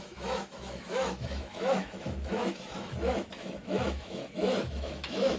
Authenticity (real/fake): fake